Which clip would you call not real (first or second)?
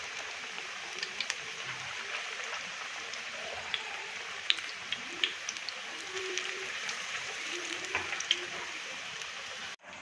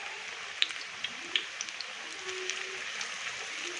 first